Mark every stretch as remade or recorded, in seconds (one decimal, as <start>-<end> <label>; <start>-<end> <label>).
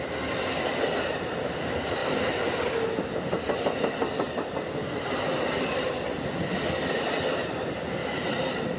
0.0-8.8 recorded